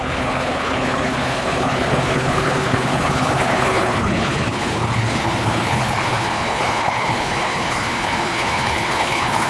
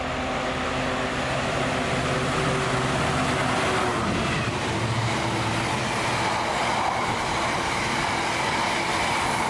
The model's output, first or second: first